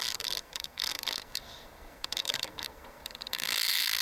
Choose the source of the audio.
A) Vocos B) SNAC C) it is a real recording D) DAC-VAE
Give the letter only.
B